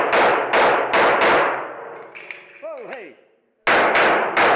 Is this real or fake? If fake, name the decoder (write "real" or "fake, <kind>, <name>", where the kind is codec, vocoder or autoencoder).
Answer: real